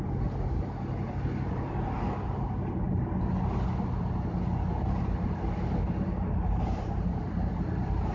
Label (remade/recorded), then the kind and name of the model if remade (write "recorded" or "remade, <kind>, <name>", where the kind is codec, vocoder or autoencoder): recorded